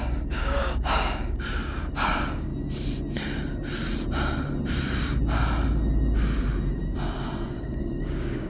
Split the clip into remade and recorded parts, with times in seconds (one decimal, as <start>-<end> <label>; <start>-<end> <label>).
0.0-2.5 remade; 2.5-7.5 recorded; 7.5-8.5 remade